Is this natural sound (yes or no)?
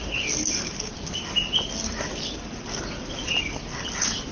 yes